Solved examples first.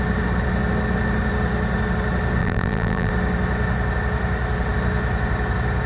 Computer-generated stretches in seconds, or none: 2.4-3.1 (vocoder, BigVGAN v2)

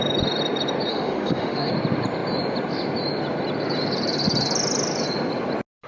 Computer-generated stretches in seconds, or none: 0.9-1.7 (autoencoder, DAC-VAE)

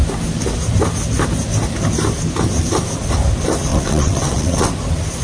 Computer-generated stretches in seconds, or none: 3.7-4.7 (vocoder, WaveNeXt)

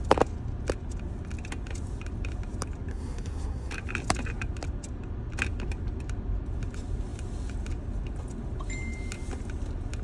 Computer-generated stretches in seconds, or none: 2.9-3.7 (codec, SNAC)

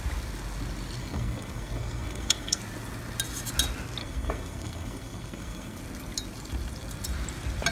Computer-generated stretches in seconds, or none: 1.0-2.6 (codec, SNAC); 4.0-5.8

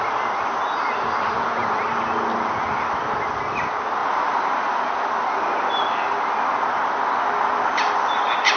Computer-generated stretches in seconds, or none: none

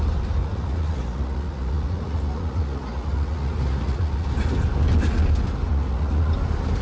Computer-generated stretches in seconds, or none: 0.4-4.3 (vocoder, Vocos); 5.7-6.3

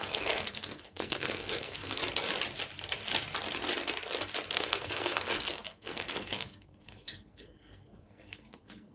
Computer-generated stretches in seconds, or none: 0.0-2.0 (codec, SNAC); 4.5-8.9